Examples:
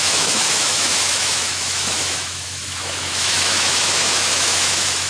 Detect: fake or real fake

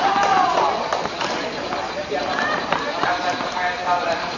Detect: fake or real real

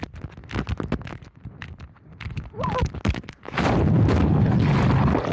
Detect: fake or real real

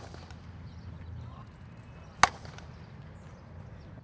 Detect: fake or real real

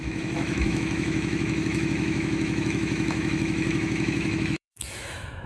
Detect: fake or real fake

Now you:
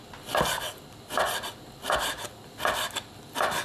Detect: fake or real real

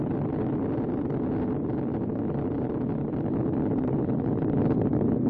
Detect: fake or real real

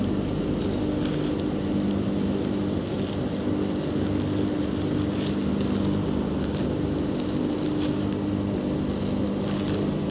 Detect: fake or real real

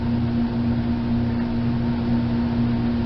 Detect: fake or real real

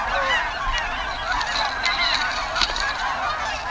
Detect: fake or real real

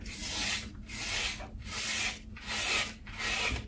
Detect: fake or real real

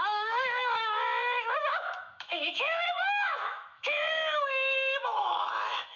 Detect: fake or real fake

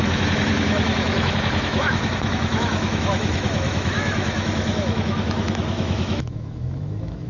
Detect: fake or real fake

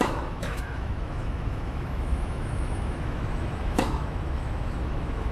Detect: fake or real fake